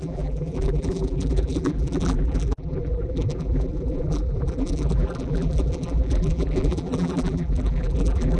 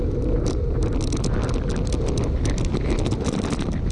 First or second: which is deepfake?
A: first